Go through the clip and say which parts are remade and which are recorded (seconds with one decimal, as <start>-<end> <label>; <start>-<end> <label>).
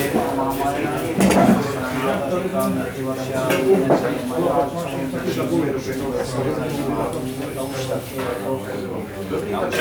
0.0-8.3 recorded; 8.3-9.4 remade; 9.4-9.8 recorded